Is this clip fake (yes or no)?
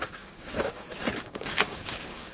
yes